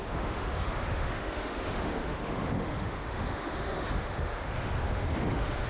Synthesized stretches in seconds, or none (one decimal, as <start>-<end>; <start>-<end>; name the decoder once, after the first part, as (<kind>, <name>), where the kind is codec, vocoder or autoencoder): 0.0-5.7 (autoencoder, DAC-VAE)